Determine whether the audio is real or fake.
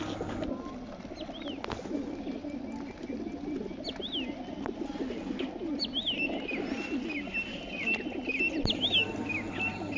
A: real